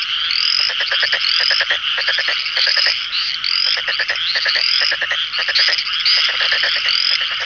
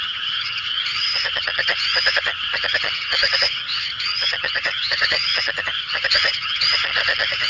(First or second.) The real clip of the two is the first